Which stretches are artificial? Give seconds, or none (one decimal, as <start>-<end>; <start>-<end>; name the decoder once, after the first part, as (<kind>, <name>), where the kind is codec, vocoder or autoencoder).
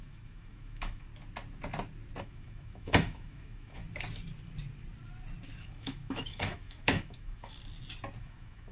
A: 0.0-1.1 (autoencoder, DAC-VAE); 2.2-3.8; 5.6-7.6; 8.2-8.7